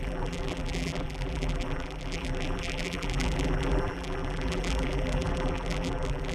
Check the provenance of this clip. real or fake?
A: fake